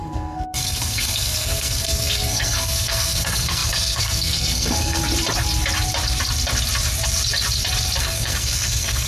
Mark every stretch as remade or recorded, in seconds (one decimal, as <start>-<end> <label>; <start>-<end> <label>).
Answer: 0.0-5.0 remade; 5.0-8.0 recorded; 8.0-9.1 remade